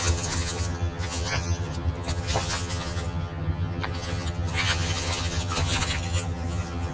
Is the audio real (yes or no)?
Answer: no